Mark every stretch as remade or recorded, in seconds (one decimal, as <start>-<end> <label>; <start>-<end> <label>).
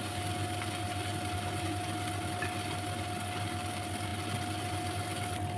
0.0-5.6 recorded